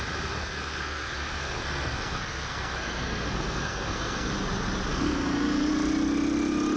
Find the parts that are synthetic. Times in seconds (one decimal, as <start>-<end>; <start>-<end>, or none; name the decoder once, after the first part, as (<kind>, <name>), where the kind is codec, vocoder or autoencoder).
0.4-4.3 (codec, SNAC); 4.9-5.7